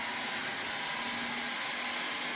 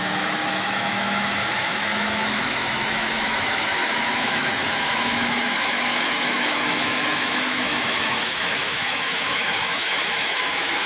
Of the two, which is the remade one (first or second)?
second